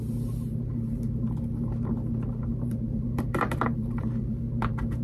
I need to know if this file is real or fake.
fake